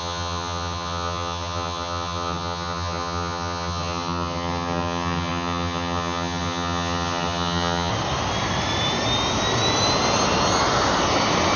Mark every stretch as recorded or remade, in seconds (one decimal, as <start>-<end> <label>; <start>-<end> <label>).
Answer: 0.0-7.9 remade; 7.9-11.6 recorded